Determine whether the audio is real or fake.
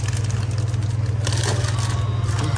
real